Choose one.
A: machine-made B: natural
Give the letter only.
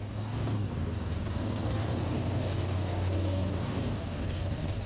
A